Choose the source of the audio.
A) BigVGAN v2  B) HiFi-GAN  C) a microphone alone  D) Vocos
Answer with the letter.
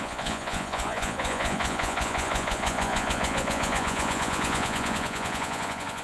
D